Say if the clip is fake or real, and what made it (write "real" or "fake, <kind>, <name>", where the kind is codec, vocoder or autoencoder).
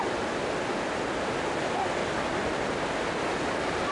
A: real